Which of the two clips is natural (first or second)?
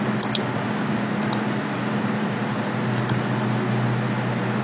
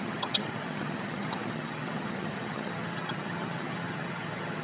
first